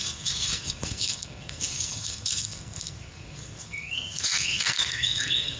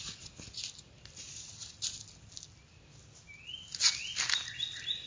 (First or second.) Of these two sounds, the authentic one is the second